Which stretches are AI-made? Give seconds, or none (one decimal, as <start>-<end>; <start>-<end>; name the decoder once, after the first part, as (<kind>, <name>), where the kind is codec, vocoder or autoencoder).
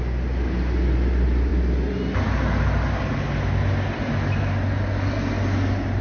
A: none